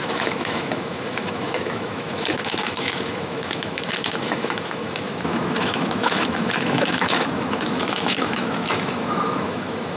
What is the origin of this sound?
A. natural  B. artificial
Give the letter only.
B